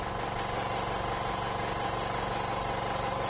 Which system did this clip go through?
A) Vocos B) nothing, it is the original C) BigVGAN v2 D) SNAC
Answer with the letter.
B